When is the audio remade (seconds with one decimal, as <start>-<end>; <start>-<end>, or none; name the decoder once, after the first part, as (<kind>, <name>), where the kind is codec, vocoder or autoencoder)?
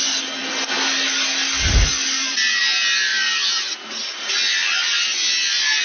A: none